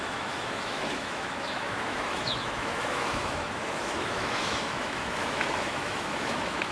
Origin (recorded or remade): remade